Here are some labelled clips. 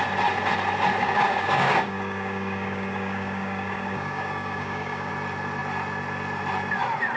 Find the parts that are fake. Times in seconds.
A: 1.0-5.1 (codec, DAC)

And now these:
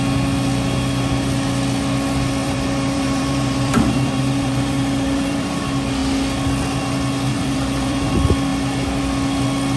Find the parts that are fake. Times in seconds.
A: 2.4-5.6 (vocoder, BigVGAN v2); 7.3-8.1

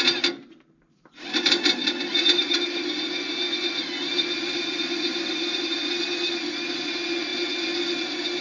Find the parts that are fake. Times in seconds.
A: none

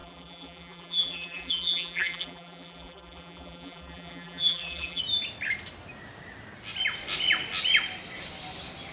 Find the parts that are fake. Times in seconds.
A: 0.0-5.0 (vocoder, BigVGAN v2)

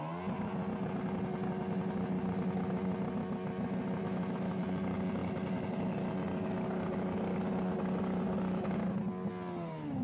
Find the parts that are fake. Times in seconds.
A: 4.0-4.6 (autoencoder, DAC-VAE)